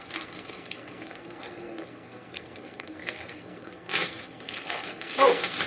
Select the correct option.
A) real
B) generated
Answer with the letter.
B